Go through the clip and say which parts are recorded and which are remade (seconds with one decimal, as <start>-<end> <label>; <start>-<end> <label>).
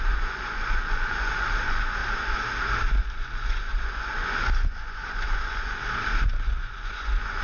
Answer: 0.0-2.0 remade; 2.0-3.0 recorded; 3.0-5.8 remade; 5.8-6.3 recorded; 6.3-7.4 remade